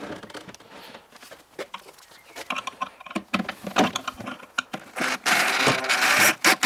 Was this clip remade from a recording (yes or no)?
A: no